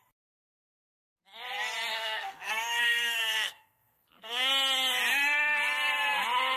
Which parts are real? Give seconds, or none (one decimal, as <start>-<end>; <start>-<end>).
0.0-1.9; 4.5-6.6